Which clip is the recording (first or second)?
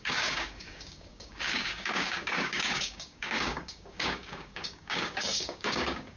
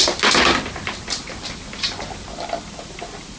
second